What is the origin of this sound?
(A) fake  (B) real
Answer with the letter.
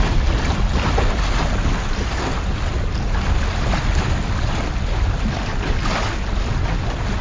B